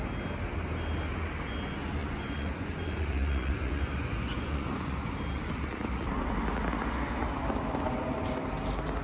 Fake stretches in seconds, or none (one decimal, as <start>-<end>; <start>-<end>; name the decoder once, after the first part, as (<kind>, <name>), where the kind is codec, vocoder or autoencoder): 2.0-5.1 (vocoder, Vocos)